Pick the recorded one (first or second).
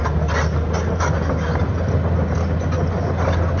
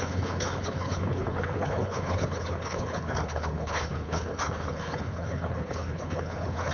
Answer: first